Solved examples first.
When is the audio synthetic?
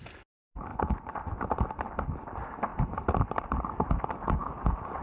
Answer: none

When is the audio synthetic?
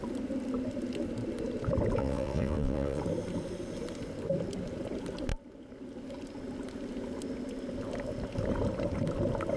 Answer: 2.0-3.0